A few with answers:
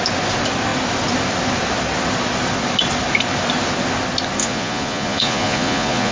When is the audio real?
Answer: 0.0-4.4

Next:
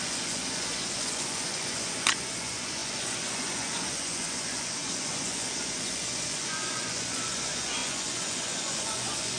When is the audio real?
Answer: none

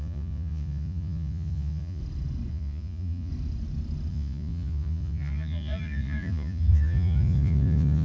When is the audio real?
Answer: 2.0-2.5; 3.3-4.1